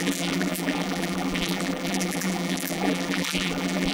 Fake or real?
fake